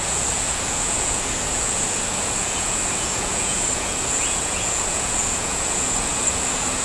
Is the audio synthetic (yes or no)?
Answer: yes